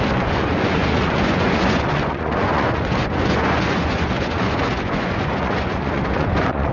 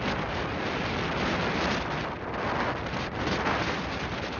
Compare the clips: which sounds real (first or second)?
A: second